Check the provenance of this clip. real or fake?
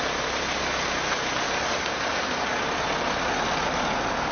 real